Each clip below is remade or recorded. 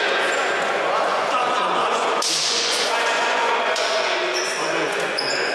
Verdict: remade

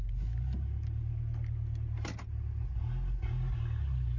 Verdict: recorded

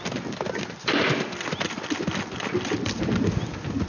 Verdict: recorded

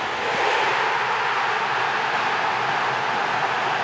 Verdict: recorded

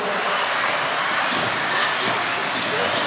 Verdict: recorded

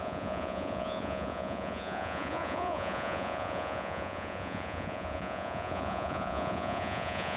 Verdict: remade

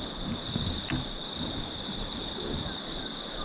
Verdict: recorded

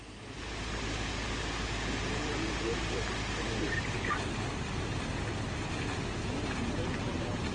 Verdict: recorded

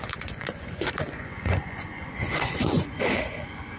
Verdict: remade